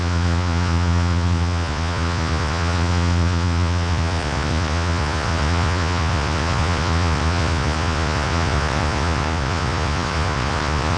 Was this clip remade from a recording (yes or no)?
yes